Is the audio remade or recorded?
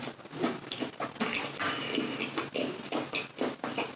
recorded